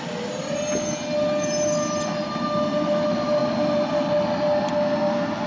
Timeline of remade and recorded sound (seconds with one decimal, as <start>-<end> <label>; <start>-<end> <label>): 0.0-5.5 recorded